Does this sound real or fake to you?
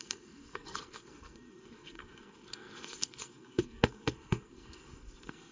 fake